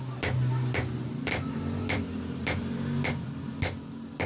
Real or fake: real